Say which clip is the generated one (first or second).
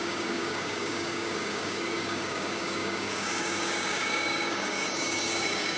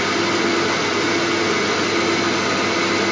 first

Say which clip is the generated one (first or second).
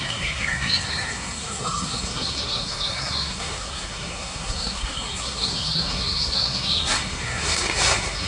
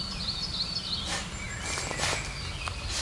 first